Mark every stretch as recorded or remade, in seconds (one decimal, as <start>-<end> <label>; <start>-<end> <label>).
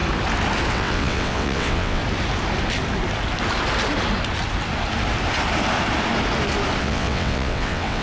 0.0-0.7 recorded; 0.7-2.0 remade; 2.0-6.8 recorded; 6.8-8.0 remade